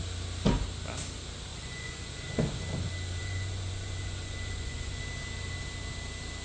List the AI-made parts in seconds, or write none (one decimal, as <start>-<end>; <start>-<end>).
1.5-2.3; 3.2-5.0